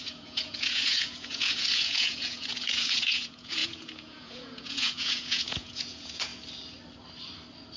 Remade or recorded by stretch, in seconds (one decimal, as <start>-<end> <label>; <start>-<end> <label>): 0.0-6.3 remade; 6.3-7.8 recorded